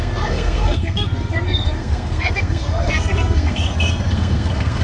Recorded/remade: remade